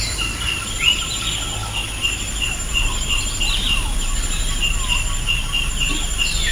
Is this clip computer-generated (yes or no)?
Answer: no